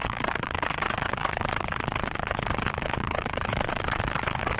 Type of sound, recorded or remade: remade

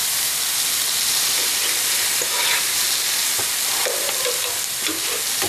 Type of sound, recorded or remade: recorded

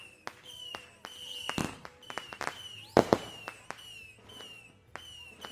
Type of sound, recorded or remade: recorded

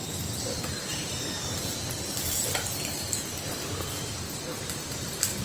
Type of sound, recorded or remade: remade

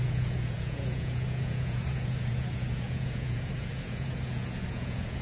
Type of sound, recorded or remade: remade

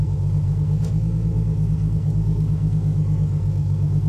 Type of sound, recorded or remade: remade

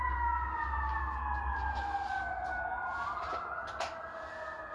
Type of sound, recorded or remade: recorded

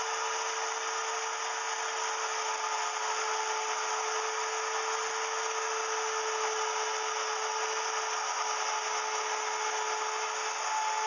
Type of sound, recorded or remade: recorded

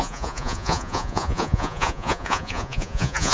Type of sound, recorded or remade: remade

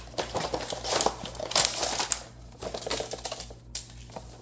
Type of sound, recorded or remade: recorded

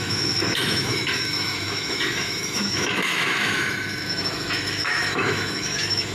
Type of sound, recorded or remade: remade